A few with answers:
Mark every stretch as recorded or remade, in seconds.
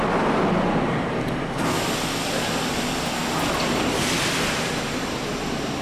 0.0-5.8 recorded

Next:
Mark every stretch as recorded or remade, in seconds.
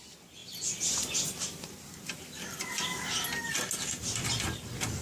0.0-5.0 recorded